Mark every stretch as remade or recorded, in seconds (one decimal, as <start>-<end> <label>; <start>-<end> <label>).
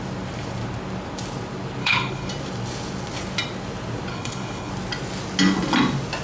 0.0-1.8 recorded; 1.8-2.3 remade; 2.3-4.1 recorded; 4.1-4.7 remade; 4.7-6.2 recorded